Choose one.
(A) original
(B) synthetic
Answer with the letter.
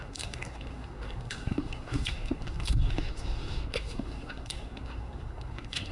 B